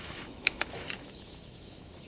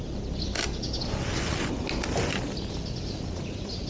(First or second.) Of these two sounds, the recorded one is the second